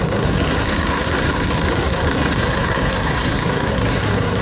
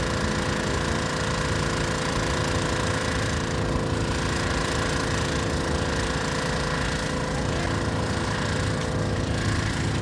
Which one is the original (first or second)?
second